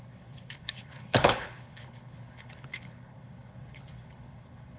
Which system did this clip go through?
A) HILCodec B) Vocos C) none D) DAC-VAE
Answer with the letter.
A